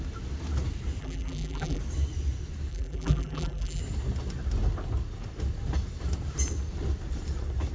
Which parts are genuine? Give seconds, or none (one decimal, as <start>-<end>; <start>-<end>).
0.0-1.0; 1.8-2.7; 3.8-7.7